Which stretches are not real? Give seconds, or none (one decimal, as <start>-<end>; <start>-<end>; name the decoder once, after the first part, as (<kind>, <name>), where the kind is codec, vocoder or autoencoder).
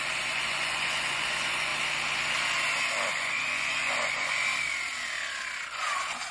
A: 0.0-1.7 (vocoder, Vocos); 3.1-4.4; 5.7-6.3